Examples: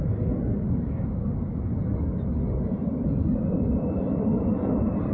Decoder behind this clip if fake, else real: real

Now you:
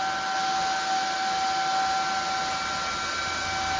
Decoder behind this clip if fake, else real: real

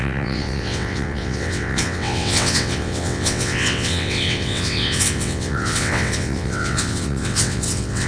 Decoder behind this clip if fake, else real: fake, vocoder, WaveNeXt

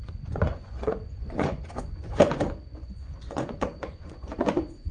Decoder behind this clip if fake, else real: fake, vocoder, Vocos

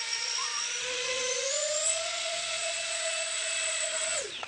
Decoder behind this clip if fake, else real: fake, vocoder, Vocos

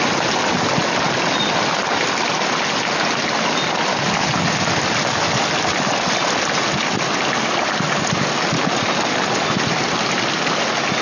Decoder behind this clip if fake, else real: real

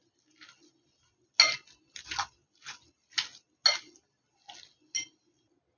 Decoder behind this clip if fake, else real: real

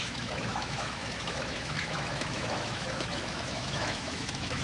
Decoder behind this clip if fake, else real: fake, autoencoder, DAC-VAE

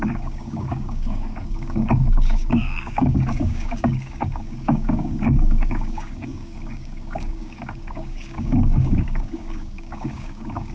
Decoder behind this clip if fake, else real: fake, codec, DAC